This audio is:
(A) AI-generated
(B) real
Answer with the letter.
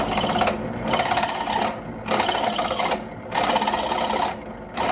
B